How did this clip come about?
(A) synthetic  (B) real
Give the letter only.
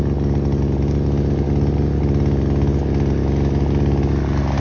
B